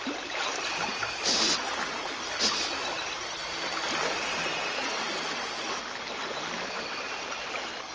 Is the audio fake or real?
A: real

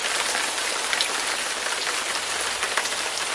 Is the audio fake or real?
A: real